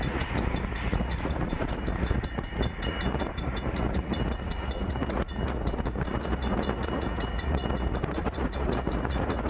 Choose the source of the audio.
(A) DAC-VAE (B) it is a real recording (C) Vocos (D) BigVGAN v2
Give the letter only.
C